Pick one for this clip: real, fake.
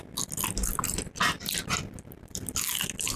real